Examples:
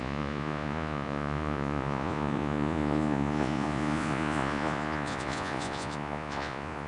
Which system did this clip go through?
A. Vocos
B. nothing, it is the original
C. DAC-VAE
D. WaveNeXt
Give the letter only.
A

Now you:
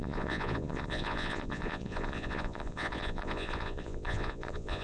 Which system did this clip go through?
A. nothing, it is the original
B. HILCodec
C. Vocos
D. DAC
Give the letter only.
C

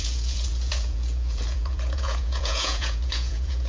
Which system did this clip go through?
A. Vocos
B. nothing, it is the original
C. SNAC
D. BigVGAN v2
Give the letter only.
A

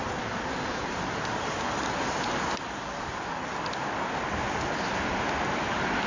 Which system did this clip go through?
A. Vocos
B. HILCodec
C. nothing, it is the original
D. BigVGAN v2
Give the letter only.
C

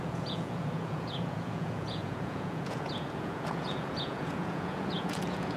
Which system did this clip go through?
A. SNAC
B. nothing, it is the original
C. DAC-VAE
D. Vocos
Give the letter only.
D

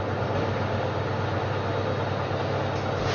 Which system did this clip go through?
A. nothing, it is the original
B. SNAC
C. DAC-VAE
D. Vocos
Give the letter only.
A